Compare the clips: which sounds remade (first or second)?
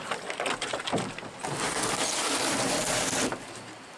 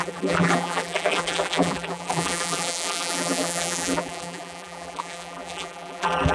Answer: second